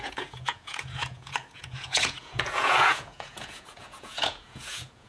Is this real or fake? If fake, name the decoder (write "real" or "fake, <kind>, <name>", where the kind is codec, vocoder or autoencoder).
fake, vocoder, Vocos